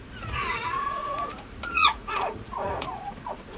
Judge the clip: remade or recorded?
remade